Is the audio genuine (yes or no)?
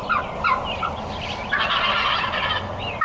yes